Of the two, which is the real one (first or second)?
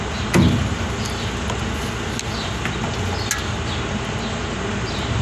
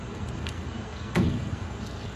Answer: first